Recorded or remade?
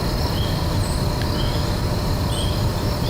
recorded